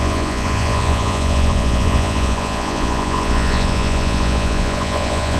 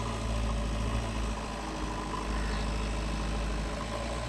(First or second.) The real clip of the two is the second